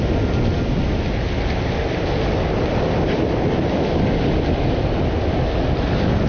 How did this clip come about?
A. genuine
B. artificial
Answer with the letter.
A